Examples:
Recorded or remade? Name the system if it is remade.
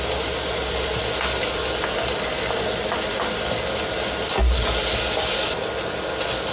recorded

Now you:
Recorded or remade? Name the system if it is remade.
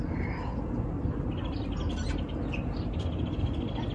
recorded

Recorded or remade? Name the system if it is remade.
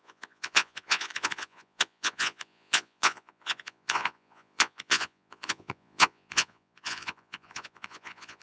remade, vocoder, Vocos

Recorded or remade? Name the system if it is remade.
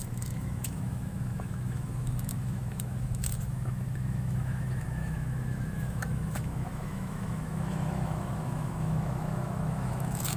remade, autoencoder, DAC-VAE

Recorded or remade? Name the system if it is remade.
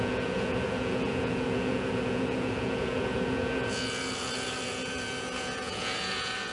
remade, vocoder, Vocos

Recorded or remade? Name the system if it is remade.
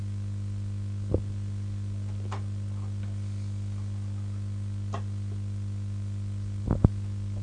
recorded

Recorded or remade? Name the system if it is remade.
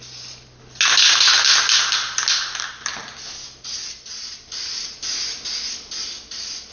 recorded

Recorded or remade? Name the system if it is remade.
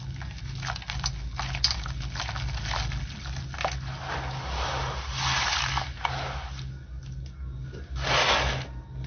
recorded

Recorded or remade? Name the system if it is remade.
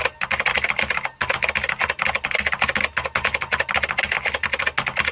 recorded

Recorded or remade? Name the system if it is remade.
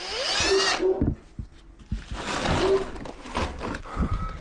recorded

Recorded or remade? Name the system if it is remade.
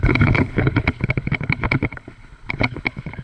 remade, codec, HILCodec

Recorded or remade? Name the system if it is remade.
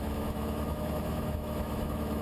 remade, autoencoder, DAC-VAE